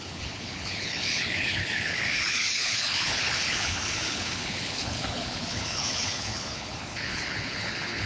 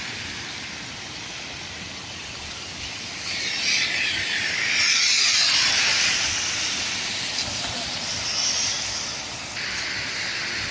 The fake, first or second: first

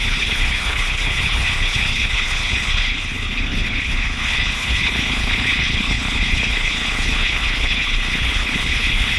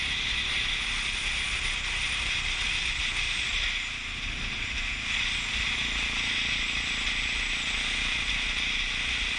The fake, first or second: first